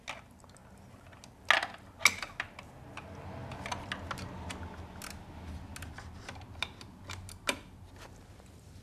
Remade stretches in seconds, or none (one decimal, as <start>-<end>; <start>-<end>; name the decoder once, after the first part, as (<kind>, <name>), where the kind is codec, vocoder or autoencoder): none